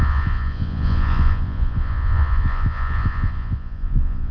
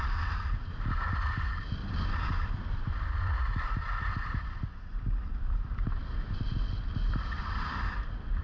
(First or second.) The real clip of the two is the second